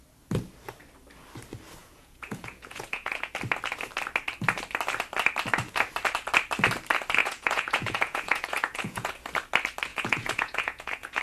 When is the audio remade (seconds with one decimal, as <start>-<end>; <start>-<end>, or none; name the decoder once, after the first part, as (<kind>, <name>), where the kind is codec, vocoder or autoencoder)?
1.8-3.3 (vocoder, Vocos); 7.2-9.1; 9.9-11.2